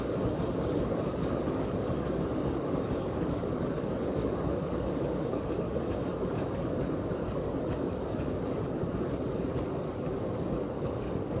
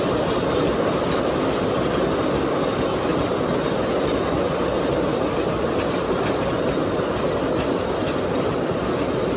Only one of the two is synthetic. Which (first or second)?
first